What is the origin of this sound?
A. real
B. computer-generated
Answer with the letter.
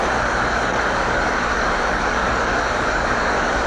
B